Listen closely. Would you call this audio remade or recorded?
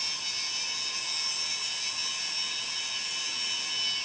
recorded